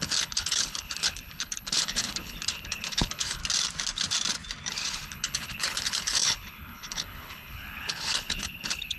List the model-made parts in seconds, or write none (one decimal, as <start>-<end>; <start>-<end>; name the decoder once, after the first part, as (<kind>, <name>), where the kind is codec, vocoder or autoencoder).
0.0-3.4 (codec, HILCodec); 4.7-9.0